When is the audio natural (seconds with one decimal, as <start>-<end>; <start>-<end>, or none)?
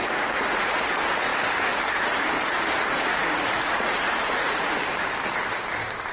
0.9-3.1; 4.7-6.1